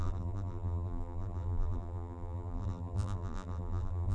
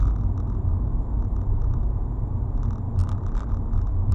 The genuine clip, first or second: second